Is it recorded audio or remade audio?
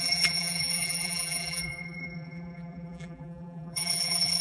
remade